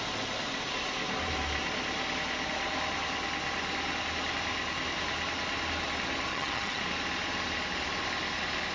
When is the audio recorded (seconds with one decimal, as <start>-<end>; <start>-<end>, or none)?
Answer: 0.0-6.3; 6.8-8.7